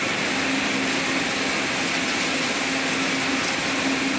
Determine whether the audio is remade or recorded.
recorded